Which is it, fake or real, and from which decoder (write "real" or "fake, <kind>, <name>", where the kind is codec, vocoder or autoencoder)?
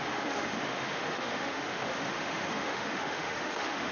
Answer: fake, autoencoder, DAC-VAE